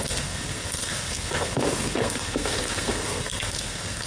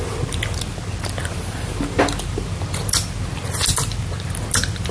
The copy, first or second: first